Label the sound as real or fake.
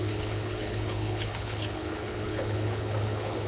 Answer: fake